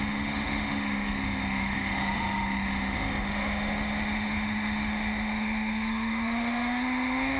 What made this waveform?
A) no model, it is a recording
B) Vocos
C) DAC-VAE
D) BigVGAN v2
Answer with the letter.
C